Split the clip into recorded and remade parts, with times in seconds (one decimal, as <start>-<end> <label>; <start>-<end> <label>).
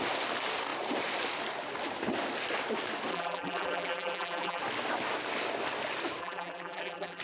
0.0-3.1 recorded; 3.1-4.6 remade; 4.6-6.2 recorded; 6.2-7.2 remade